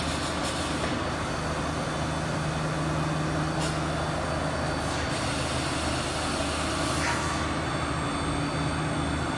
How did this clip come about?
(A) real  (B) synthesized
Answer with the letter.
A